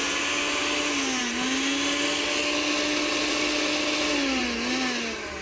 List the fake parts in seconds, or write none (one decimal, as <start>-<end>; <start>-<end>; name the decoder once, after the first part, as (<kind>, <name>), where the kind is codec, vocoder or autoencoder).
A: none